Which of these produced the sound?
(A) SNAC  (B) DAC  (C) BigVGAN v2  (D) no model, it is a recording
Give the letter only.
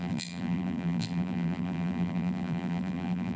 C